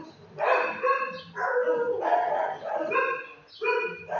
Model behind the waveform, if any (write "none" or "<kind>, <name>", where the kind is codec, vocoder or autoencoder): none